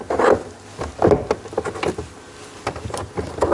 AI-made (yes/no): no